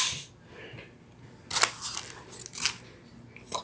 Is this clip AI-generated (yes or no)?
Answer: no